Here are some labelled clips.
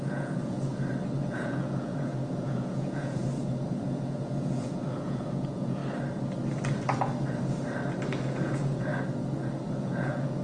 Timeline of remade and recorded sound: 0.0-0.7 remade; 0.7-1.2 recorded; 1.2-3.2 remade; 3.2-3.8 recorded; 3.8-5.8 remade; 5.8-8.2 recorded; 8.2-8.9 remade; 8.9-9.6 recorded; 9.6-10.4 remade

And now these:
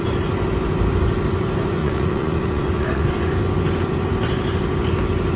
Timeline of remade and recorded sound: 0.0-1.8 recorded; 1.8-3.4 remade; 3.4-5.4 recorded

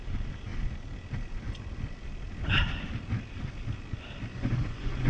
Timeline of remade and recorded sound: 0.0-4.3 recorded; 4.3-5.1 remade

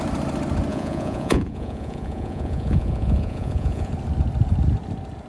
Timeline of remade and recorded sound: 0.0-0.7 recorded; 0.7-3.9 remade; 3.9-5.3 recorded

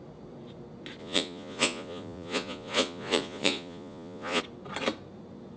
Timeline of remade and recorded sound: 0.0-1.0 recorded; 1.0-4.4 remade; 4.4-5.6 recorded